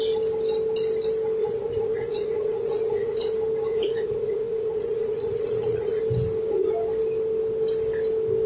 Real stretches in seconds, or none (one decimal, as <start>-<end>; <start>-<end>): 0.0-1.4; 3.3-3.7; 6.0-8.5